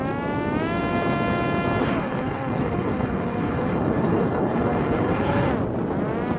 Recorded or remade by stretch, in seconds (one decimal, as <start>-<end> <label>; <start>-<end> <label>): 0.0-1.8 recorded; 1.8-5.5 remade; 5.5-6.4 recorded